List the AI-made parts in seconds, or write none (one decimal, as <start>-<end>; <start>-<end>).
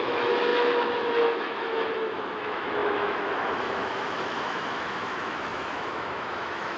0.0-6.8